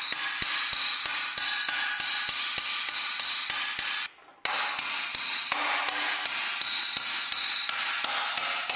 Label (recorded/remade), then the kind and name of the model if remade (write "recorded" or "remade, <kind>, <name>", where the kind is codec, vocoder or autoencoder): recorded